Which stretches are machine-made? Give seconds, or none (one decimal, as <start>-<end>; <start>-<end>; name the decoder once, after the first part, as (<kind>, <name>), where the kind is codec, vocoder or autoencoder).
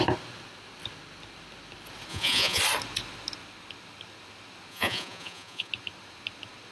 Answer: 2.1-2.6 (vocoder, Vocos); 4.7-5.7